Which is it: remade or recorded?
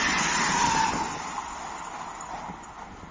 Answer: recorded